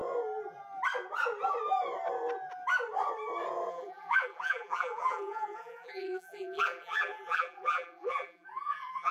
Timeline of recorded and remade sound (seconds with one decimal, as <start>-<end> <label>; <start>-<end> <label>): 0.0-3.7 recorded; 3.7-9.1 remade